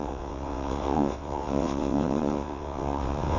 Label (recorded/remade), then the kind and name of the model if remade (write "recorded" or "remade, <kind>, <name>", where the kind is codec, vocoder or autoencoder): remade, vocoder, WaveNeXt